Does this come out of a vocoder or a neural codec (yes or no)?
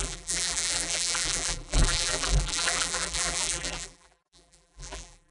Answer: yes